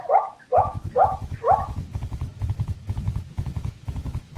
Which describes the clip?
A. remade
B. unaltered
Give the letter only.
A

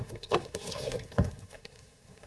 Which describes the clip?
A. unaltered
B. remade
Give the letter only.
B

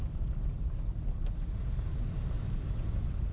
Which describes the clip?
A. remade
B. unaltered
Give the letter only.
A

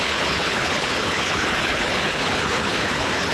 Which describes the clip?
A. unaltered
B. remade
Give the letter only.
B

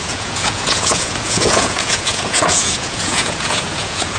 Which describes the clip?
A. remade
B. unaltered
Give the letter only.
A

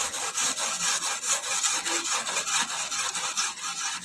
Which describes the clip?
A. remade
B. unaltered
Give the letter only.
B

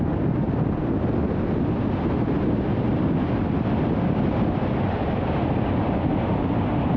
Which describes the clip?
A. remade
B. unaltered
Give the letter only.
B